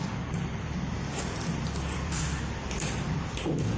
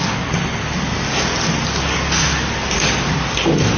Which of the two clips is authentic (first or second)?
second